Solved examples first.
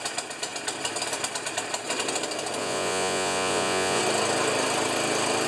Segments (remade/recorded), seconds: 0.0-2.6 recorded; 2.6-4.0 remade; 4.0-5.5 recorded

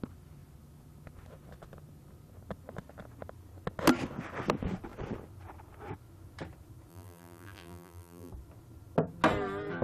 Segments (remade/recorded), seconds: 0.0-6.9 recorded; 6.9-8.3 remade; 8.3-9.8 recorded

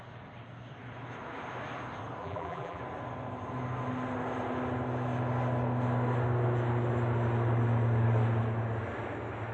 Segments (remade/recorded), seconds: 0.0-2.2 recorded; 2.2-2.8 remade; 2.8-9.5 recorded

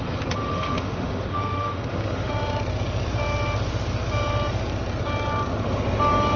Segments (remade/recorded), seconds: 0.0-0.4 recorded; 0.4-2.3 remade; 2.3-6.4 recorded